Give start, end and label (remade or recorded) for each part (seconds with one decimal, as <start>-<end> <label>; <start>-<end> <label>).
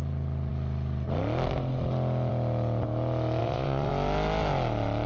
0.0-3.4 recorded; 3.4-3.9 remade; 3.9-5.1 recorded